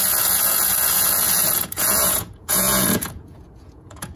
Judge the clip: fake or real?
fake